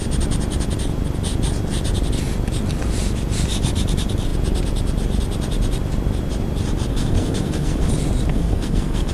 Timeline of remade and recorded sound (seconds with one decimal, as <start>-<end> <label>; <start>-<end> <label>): 0.0-6.9 recorded; 6.9-7.9 remade; 7.9-8.3 recorded; 8.3-9.1 remade